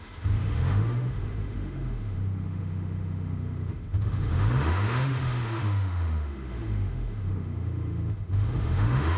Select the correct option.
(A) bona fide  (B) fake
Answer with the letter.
B